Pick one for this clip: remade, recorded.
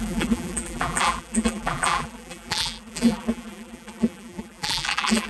remade